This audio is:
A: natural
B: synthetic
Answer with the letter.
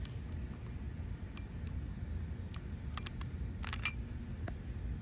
A